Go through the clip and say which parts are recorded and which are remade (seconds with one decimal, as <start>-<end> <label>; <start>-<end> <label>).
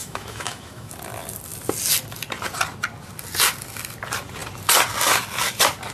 0.0-0.9 remade; 0.9-5.9 recorded